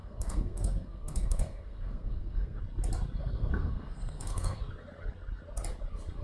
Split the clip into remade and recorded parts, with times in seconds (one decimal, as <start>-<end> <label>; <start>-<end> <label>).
0.0-2.6 remade; 2.6-3.2 recorded; 3.2-4.6 remade; 4.6-6.2 recorded